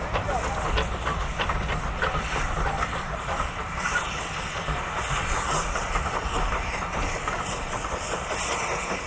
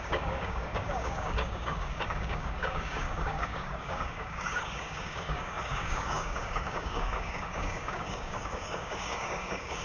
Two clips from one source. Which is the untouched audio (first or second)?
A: first